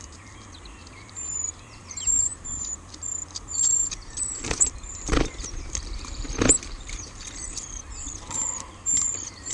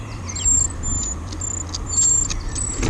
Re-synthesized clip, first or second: first